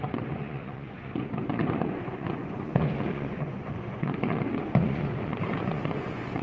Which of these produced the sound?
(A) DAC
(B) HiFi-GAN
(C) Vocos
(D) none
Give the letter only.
C